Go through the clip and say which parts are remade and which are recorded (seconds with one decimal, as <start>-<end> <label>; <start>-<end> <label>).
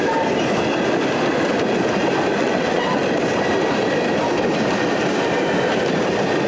0.0-2.4 recorded; 2.4-3.0 remade; 3.0-6.5 recorded